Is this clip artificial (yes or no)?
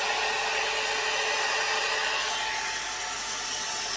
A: no